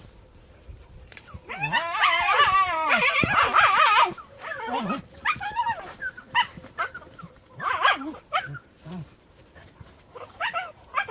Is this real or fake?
fake